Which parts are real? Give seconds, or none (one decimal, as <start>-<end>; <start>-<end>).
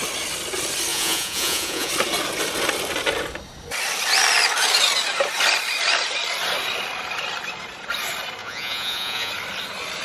0.0-0.9; 1.9-8.4; 9.3-10.0